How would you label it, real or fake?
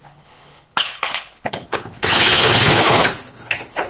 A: fake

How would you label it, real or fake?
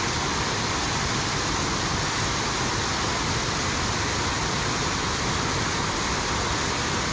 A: real